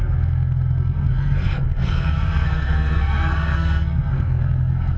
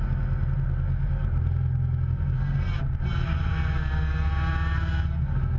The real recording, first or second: second